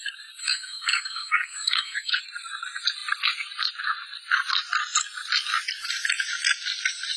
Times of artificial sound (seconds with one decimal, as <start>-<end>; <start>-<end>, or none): 0.4-2.2